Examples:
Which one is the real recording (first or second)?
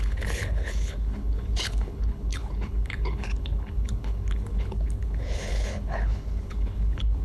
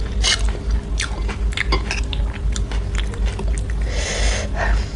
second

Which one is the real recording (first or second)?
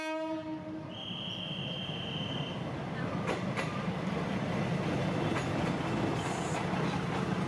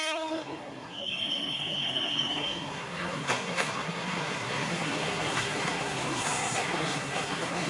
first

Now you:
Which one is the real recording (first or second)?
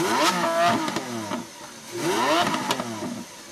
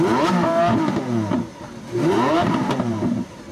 first